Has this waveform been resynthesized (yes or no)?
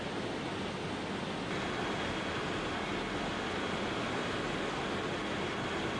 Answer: no